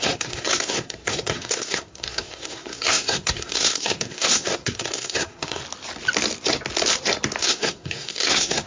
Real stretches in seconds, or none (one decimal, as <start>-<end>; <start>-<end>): 5.6-7.4